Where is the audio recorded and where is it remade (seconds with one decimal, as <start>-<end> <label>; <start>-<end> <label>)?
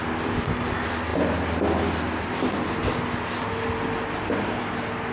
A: 0.0-5.1 recorded